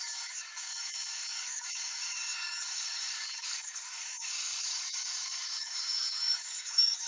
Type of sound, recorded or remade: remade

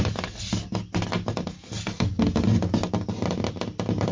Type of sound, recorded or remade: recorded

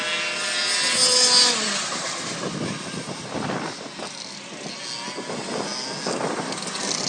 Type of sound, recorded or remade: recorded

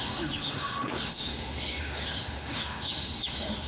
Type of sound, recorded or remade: remade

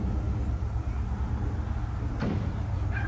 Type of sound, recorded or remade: recorded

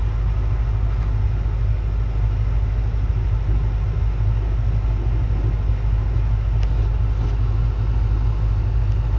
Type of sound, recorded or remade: recorded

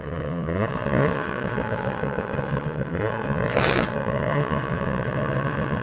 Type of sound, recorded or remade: remade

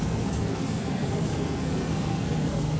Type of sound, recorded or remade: remade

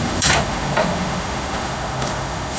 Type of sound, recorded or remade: remade